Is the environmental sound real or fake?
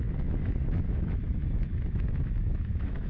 fake